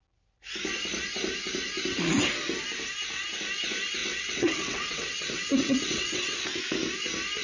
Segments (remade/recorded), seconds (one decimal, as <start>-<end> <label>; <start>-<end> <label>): 0.0-4.0 recorded; 4.0-6.6 remade; 6.6-7.4 recorded